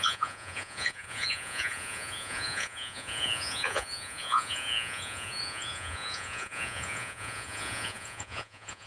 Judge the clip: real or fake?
fake